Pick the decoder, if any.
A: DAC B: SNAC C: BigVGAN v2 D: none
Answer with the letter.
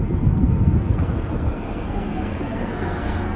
B